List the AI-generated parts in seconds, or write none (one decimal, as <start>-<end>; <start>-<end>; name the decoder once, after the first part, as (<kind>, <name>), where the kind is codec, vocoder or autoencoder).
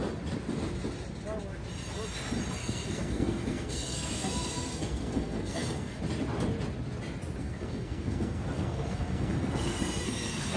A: 2.6-6.0 (codec, SNAC); 7.4-10.6